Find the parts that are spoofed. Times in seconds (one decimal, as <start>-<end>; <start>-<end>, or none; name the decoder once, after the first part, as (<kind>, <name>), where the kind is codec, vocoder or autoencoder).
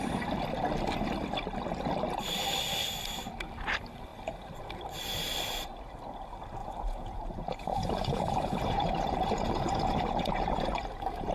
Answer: 6.6-11.3 (vocoder, Vocos)